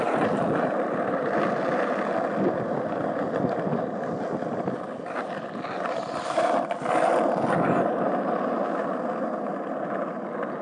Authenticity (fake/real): real